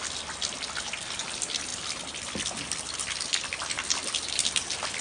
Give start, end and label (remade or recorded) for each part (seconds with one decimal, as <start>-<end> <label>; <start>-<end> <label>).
0.0-5.0 recorded